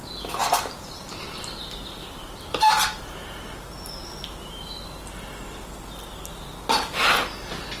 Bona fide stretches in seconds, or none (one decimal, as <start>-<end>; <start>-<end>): 0.0-7.8